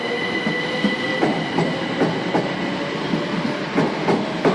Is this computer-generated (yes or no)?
no